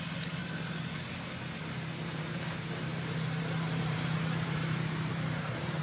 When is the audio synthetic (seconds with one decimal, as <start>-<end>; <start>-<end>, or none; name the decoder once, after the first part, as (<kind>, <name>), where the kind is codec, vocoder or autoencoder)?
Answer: 2.1-5.8 (vocoder, BigVGAN v2)